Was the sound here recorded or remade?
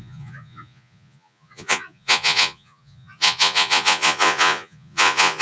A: remade